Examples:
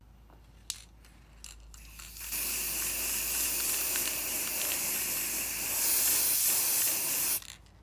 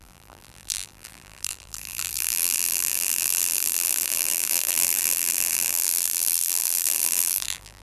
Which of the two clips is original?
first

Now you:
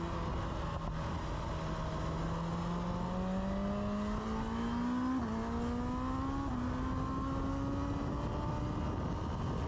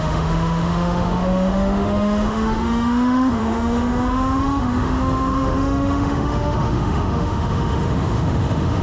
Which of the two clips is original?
first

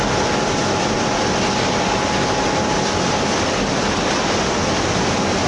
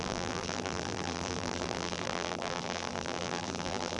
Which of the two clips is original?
first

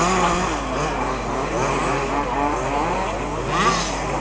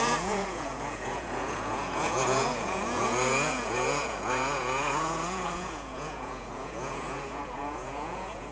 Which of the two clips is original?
first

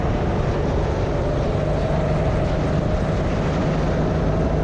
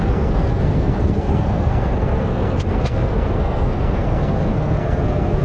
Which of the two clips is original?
first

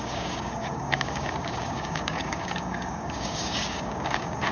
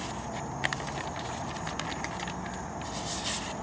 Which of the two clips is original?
second